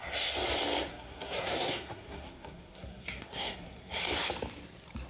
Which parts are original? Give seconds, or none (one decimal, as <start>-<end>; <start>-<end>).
0.0-0.9; 4.0-5.1